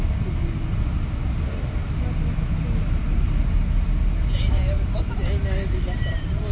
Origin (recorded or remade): recorded